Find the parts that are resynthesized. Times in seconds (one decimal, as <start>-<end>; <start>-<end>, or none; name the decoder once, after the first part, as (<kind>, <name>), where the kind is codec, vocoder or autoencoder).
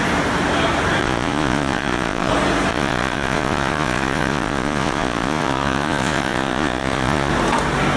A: 1.0-2.3 (vocoder, Vocos); 2.7-7.3